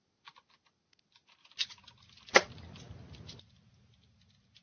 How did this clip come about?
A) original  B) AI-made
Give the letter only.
A